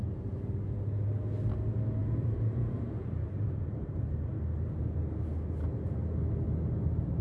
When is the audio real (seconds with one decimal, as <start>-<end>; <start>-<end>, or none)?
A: 0.0-2.0; 4.0-7.2